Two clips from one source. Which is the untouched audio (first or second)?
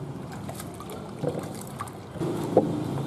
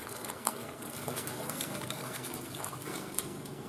first